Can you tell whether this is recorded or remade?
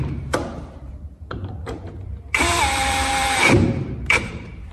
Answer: remade